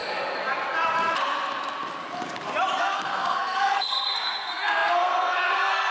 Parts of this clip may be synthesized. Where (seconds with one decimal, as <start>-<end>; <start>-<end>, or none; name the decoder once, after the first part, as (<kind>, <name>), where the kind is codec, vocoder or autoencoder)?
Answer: 2.8-5.9 (codec, SNAC)